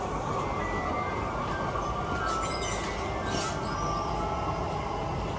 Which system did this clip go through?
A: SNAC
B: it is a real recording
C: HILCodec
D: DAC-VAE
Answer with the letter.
B